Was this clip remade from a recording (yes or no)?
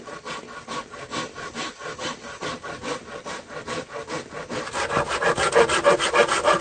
no